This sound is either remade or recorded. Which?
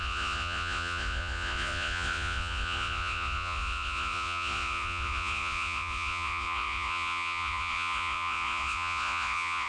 remade